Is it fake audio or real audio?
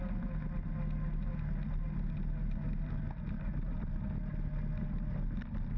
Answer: real